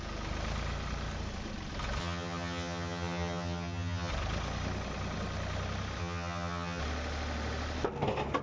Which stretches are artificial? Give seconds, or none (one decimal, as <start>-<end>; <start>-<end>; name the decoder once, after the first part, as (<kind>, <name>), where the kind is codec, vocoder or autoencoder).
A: 2.0-4.1 (vocoder, HiFi-GAN); 6.0-6.8